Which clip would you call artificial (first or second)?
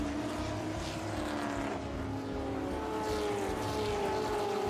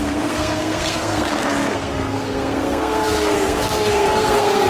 second